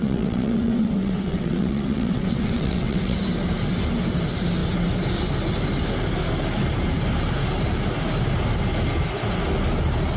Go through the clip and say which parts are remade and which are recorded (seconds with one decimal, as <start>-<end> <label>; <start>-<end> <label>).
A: 0.0-3.2 remade; 3.2-10.2 recorded